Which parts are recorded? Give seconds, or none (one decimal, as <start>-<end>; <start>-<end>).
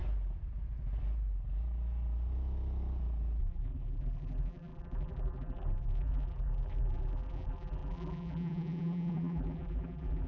0.0-3.4